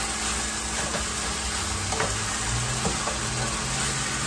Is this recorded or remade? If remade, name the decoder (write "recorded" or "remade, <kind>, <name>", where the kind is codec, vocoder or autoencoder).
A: recorded